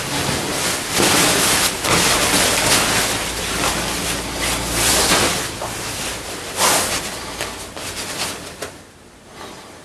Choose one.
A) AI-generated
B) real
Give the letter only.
B